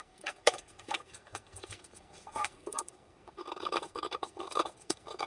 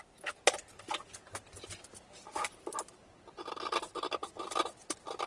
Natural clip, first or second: second